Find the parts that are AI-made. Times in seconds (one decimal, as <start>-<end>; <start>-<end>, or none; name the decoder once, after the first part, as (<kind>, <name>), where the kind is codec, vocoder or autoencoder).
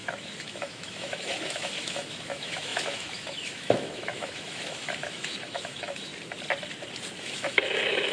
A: 0.0-6.1 (autoencoder, DAC-VAE); 7.2-8.1